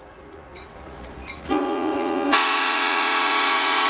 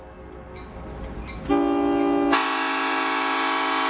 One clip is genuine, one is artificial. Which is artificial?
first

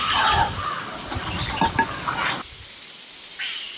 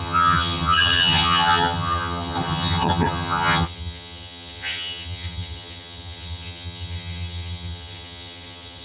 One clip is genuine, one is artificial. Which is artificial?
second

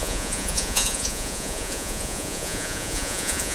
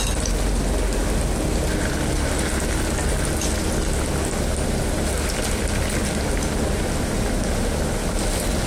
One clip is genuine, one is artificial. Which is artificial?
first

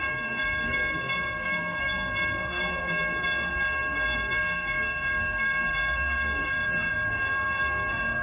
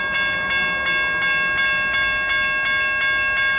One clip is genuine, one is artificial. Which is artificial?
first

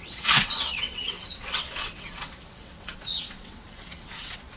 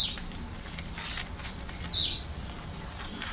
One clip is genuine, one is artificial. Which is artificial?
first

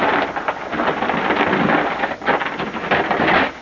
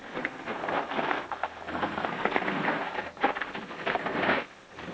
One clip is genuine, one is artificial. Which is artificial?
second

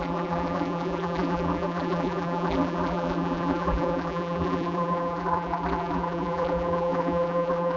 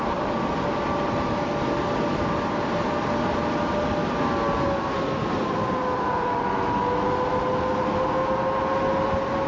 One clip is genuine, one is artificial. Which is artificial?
first